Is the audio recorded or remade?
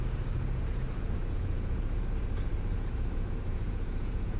remade